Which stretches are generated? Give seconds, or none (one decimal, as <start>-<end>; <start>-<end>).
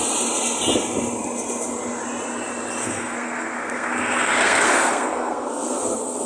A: 2.8-6.3